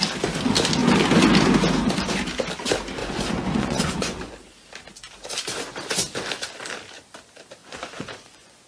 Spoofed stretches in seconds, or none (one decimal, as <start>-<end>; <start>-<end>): 3.0-4.3; 7.6-8.7